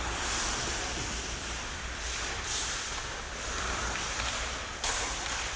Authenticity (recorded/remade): remade